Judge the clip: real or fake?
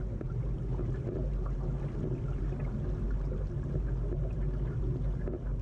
real